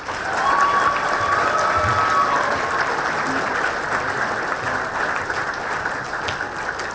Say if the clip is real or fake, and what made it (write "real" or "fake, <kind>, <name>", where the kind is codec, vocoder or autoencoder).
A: real